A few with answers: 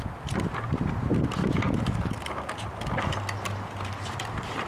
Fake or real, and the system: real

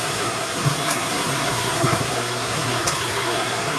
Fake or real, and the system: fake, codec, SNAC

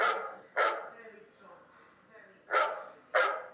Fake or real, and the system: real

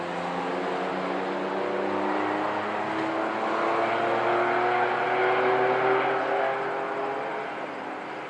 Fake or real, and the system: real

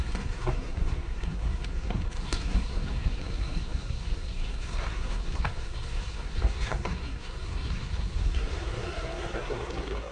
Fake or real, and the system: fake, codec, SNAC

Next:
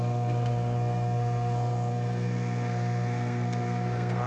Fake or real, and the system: fake, codec, SNAC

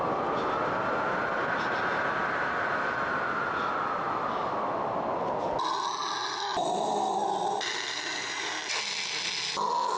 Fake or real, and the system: real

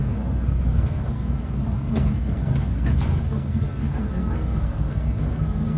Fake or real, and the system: fake, codec, SNAC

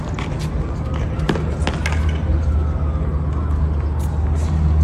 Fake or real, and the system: real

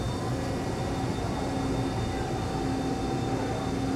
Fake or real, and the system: real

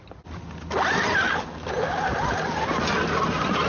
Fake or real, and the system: real